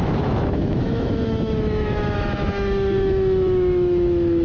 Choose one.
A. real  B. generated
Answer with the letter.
B